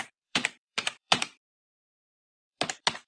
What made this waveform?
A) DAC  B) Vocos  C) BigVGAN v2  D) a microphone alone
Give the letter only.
C